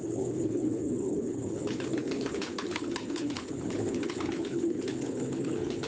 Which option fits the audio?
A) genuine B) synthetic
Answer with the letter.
B